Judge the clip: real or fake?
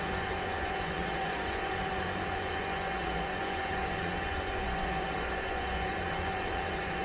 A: fake